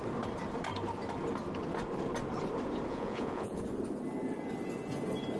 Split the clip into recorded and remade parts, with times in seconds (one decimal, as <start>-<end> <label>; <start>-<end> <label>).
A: 0.0-2.9 recorded; 2.9-3.6 remade; 3.6-5.4 recorded